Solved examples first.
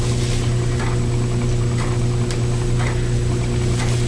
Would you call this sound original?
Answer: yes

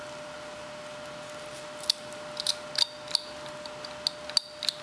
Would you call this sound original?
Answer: yes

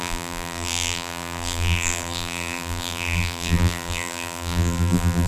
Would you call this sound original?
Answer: no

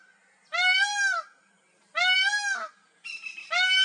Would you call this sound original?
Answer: yes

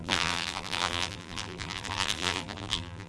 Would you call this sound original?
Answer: no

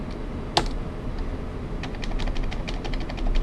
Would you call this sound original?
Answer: yes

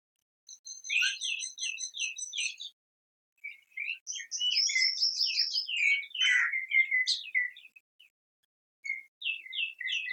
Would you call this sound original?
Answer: yes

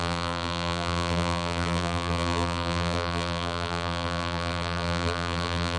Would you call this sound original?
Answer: no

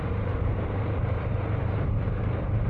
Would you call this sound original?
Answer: no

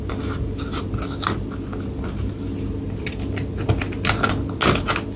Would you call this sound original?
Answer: yes